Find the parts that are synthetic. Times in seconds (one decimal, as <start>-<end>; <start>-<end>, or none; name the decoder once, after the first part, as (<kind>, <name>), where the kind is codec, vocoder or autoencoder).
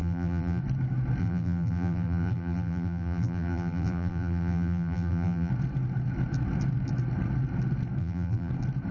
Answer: 0.0-0.6 (vocoder, BigVGAN v2); 1.2-5.5; 8.0-8.5